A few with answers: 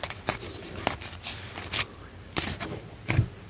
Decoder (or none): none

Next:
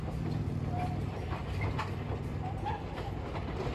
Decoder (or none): none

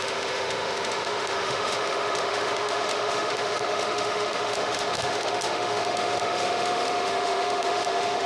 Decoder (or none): autoencoder, DAC-VAE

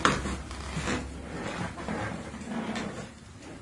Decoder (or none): none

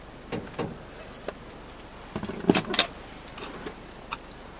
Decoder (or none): none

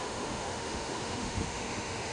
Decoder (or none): autoencoder, DAC-VAE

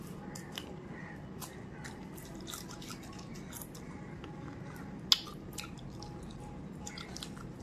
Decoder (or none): none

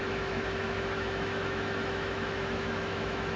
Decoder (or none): autoencoder, DAC-VAE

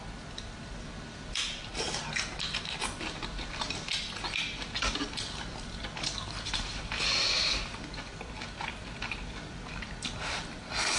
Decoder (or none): none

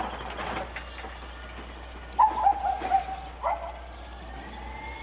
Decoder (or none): none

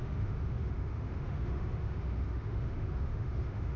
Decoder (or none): autoencoder, DAC-VAE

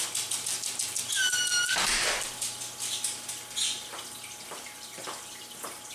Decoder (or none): none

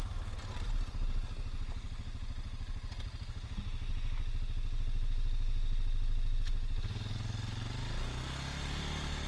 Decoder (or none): none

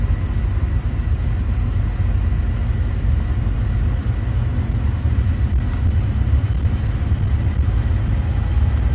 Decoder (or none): none